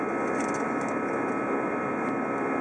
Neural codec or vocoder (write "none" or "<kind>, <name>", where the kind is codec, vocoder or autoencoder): none